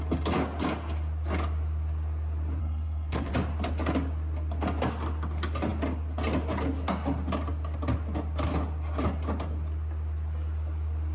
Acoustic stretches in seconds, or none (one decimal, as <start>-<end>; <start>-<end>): 0.0-2.6; 3.3-11.1